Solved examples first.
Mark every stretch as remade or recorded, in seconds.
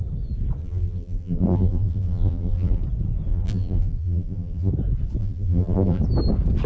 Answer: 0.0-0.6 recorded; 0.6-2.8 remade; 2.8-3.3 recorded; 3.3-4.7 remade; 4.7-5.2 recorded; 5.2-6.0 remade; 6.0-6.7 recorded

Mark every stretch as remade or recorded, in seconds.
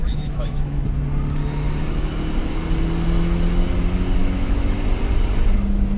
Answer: 0.0-0.8 remade; 0.8-4.2 recorded; 4.2-4.8 remade; 4.8-6.0 recorded